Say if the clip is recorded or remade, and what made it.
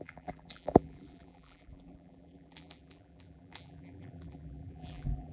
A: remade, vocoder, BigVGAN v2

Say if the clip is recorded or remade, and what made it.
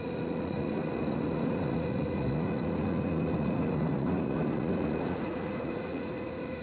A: remade, vocoder, Vocos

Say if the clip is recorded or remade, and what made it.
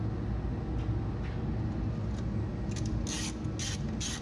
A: recorded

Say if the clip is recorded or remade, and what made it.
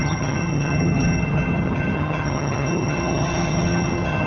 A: remade, vocoder, HiFi-GAN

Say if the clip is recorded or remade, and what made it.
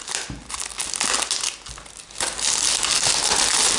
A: recorded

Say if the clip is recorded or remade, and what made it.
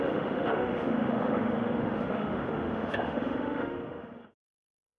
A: remade, autoencoder, DAC-VAE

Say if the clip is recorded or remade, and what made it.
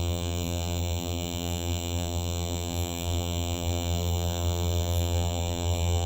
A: remade, vocoder, BigVGAN v2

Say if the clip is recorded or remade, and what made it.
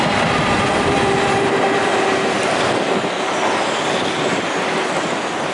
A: recorded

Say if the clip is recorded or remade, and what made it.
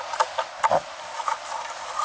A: recorded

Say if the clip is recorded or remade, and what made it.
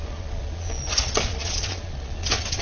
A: remade, vocoder, Vocos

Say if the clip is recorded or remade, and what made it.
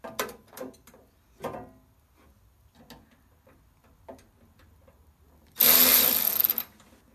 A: recorded